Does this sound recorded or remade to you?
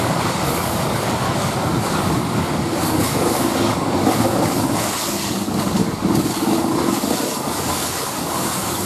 remade